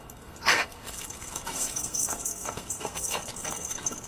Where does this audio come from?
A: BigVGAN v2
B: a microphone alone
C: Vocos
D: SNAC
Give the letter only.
D